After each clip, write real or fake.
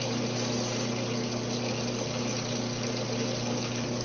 real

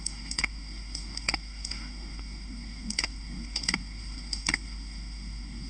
fake